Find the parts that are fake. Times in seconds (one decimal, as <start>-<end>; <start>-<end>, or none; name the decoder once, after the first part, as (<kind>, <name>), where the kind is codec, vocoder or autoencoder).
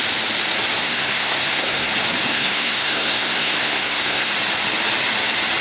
0.8-1.9 (codec, SNAC); 2.3-4.3